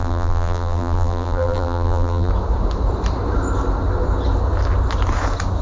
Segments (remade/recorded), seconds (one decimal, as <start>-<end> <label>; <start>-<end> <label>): 0.0-2.3 remade; 2.3-5.6 recorded